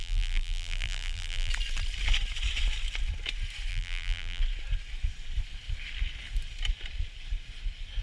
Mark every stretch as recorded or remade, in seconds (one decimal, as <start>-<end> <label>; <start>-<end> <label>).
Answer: 0.0-1.5 remade; 1.5-3.7 recorded; 3.7-4.4 remade; 4.4-8.0 recorded